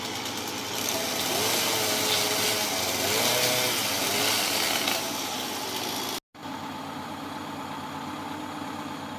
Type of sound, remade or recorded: recorded